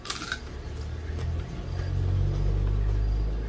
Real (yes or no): yes